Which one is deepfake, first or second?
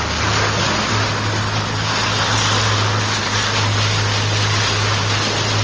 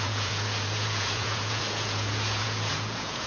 second